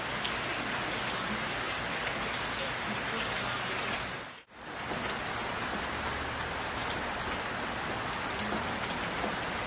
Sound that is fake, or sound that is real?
real